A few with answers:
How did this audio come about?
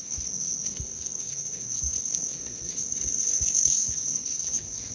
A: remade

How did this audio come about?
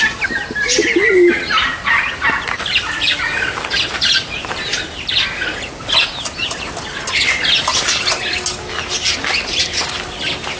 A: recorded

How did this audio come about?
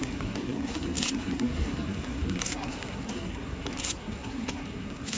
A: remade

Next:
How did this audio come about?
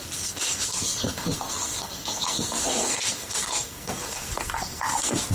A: remade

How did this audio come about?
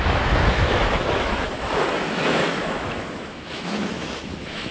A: remade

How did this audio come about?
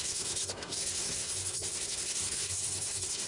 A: remade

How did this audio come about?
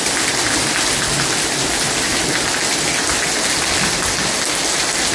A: recorded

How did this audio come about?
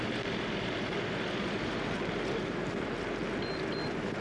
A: recorded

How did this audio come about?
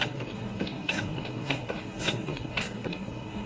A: remade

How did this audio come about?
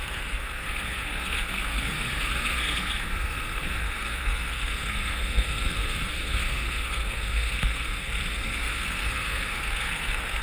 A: remade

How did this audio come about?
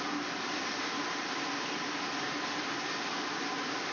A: recorded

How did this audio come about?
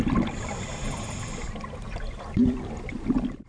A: remade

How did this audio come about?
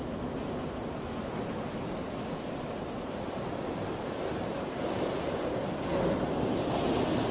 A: recorded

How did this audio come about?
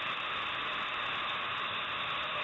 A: recorded